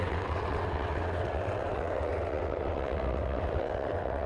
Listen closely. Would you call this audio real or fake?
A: fake